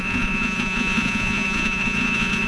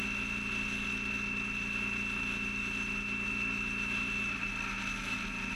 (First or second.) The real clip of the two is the second